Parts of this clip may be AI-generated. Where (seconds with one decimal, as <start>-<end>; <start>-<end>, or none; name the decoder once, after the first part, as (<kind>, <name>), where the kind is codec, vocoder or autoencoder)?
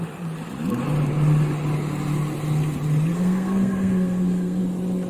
3.1-4.6 (codec, SNAC)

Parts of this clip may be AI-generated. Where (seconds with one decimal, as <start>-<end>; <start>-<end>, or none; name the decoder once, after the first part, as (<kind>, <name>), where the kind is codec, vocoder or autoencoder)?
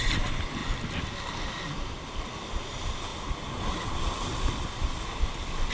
none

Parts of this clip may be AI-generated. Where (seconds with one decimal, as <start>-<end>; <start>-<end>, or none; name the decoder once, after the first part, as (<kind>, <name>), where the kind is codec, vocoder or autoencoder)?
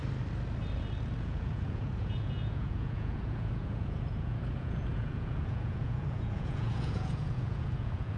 1.2-8.2 (vocoder, Vocos)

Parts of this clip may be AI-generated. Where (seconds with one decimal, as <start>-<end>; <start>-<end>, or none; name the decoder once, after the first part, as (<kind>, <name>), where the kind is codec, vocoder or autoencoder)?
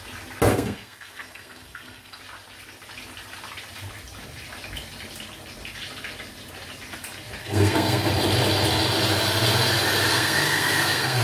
0.5-2.2 (codec, SNAC); 7.4-8.1; 10.1-11.2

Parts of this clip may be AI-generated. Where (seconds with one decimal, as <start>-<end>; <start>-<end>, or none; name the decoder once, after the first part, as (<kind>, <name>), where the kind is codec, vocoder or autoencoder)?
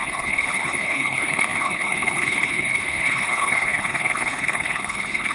0.0-5.3 (codec, HILCodec)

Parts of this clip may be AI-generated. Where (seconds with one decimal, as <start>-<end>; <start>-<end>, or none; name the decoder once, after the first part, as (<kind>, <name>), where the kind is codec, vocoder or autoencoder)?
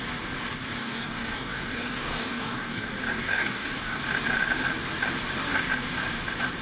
0.8-2.9 (codec, DAC); 3.3-4.0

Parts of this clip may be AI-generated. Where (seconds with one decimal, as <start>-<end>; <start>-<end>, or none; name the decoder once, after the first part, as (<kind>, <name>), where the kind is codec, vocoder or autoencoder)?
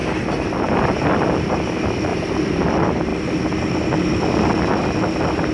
2.1-2.6 (vocoder, BigVGAN v2)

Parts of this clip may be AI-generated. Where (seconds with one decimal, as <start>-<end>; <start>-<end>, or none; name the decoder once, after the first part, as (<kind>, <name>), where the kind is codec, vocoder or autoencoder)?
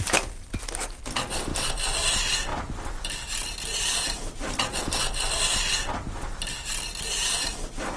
none